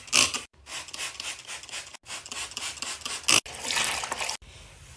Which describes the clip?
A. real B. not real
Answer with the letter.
A